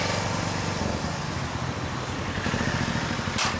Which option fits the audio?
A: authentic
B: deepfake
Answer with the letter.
A